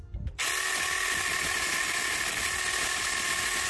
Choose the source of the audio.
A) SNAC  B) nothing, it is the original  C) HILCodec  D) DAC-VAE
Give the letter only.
B